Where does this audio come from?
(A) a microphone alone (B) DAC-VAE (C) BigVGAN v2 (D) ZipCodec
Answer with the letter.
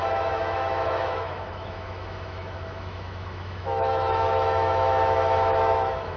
B